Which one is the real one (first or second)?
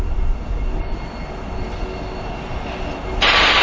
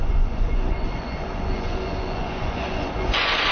first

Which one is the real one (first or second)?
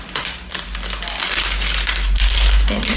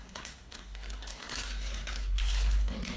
first